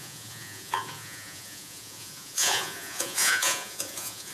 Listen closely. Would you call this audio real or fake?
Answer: fake